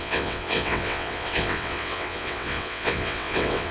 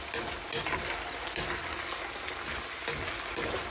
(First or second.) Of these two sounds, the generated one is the first